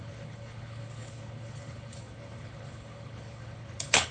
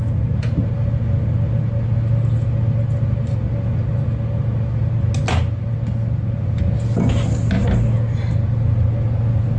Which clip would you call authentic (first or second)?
second